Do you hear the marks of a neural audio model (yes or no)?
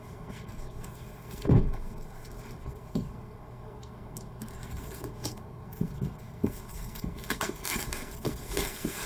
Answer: yes